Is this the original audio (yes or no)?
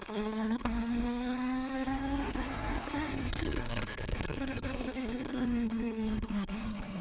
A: no